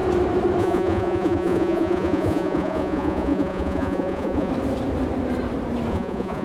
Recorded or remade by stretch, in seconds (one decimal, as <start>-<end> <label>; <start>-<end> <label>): 0.0-0.6 recorded; 0.6-4.5 remade; 4.5-5.9 recorded; 5.9-6.4 remade